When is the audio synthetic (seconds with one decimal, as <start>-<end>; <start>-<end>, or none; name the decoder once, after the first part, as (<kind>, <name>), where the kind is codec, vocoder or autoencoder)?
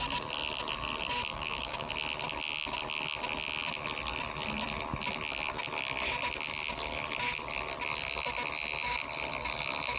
1.3-1.9 (codec, DAC)